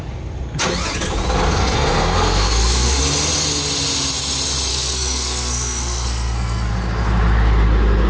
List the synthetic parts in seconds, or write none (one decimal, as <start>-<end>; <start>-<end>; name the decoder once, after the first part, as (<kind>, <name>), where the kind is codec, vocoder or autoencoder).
1.5-3.0 (codec, SNAC); 4.7-6.7